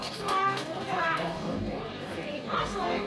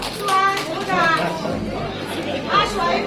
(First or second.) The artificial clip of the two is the first